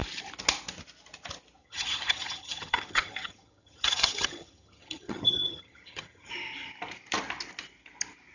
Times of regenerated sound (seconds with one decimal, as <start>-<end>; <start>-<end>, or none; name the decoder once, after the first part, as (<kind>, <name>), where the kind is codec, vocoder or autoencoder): 1.6-6.3 (vocoder, HiFi-GAN)